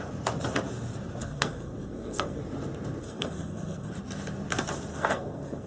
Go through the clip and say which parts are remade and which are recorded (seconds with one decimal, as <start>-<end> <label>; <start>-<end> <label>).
0.0-1.2 recorded; 1.2-2.4 remade; 2.4-3.0 recorded; 3.0-3.9 remade; 3.9-4.9 recorded; 4.9-5.7 remade